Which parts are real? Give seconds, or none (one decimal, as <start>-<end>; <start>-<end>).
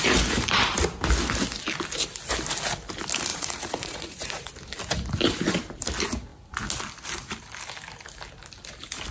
0.0-3.3; 4.5-9.1